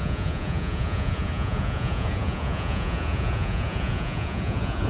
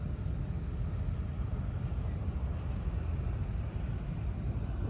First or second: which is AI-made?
first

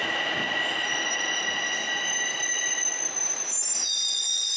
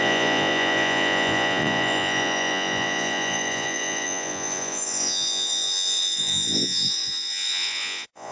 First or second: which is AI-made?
second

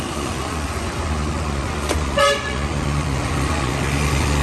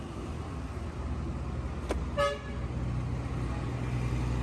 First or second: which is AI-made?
first